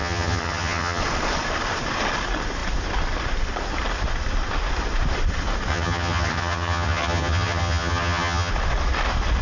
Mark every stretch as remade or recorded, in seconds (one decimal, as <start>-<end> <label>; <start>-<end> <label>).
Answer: 0.0-1.0 remade; 1.0-5.7 recorded; 5.7-8.5 remade; 8.5-9.4 recorded